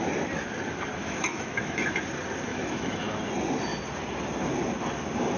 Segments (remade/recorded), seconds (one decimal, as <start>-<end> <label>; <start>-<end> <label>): 0.0-1.0 recorded; 1.0-1.9 remade; 1.9-2.5 recorded; 2.5-3.3 remade; 3.3-5.4 recorded